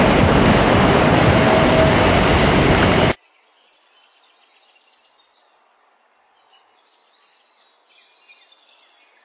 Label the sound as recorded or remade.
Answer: recorded